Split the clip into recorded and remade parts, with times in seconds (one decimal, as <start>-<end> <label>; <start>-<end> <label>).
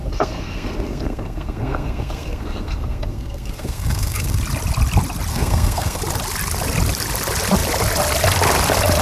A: 0.0-4.4 remade; 4.4-5.3 recorded; 5.3-6.0 remade; 6.0-9.0 recorded